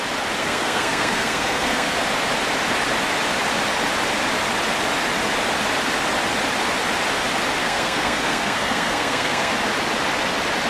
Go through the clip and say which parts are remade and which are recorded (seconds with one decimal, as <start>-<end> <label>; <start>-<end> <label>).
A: 0.0-0.4 recorded; 0.4-2.0 remade; 2.0-7.6 recorded; 7.6-9.5 remade; 9.5-10.7 recorded